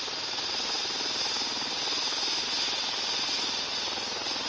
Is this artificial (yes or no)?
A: no